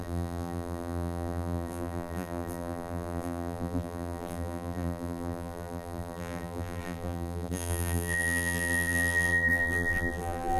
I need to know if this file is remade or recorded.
remade